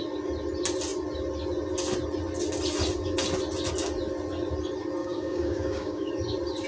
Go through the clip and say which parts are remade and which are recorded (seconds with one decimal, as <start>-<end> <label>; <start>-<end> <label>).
0.0-5.0 recorded; 5.0-6.1 remade; 6.1-6.7 recorded